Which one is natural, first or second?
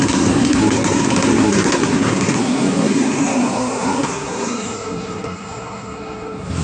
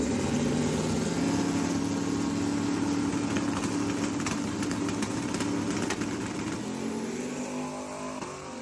second